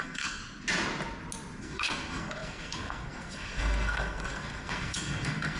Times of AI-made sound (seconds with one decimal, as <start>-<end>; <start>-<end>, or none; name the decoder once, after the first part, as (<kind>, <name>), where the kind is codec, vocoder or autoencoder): 0.0-0.4 (codec, SNAC); 1.6-5.6